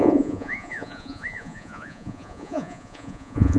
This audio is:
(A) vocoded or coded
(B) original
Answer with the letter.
A